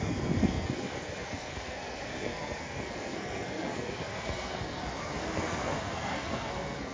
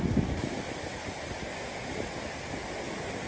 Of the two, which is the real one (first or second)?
second